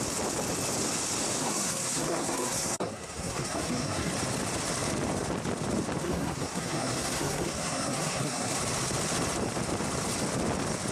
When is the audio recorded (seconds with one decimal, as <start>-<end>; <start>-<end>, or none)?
0.0-1.4; 4.1-6.0; 8.6-10.9